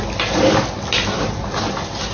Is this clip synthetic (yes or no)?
no